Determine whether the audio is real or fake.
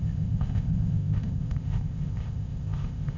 fake